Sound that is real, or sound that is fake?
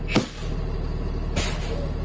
real